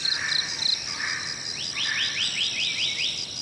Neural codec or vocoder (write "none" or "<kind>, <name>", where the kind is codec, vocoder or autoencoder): none